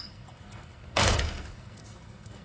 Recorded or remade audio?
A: remade